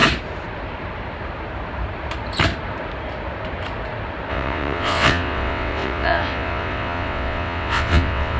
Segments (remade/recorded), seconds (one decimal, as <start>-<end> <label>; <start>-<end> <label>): 0.0-4.3 recorded; 4.3-8.4 remade